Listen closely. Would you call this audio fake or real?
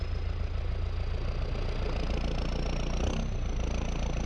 real